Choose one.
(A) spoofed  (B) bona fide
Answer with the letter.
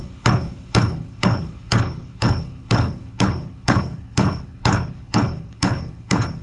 A